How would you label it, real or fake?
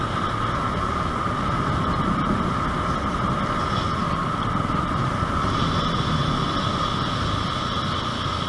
real